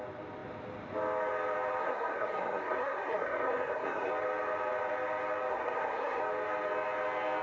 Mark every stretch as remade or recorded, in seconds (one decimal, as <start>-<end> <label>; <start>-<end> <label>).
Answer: 0.0-1.8 recorded; 1.8-4.1 remade; 4.1-5.5 recorded; 5.5-6.2 remade; 6.2-7.4 recorded